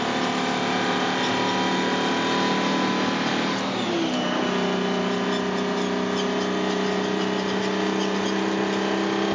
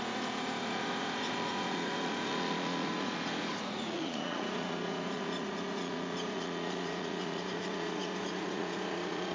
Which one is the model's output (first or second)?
second